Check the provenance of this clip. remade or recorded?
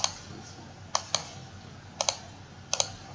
recorded